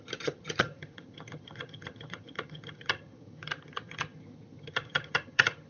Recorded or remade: remade